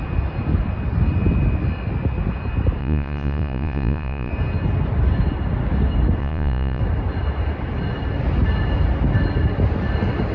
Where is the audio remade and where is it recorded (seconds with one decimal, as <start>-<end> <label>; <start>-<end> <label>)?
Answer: 0.0-2.8 recorded; 2.8-4.3 remade; 4.3-6.2 recorded; 6.2-6.8 remade; 6.8-10.3 recorded